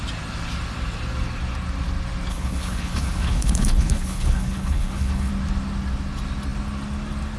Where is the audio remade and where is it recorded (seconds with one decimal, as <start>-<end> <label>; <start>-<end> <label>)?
0.0-2.3 recorded; 2.3-5.3 remade; 5.3-7.4 recorded